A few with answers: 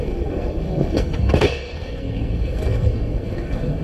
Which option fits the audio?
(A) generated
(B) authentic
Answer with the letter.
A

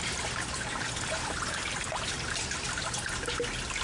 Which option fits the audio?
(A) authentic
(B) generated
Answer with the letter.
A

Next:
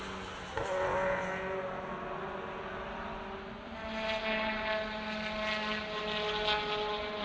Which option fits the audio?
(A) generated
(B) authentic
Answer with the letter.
B